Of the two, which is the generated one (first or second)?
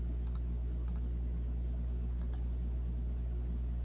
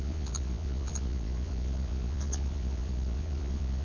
second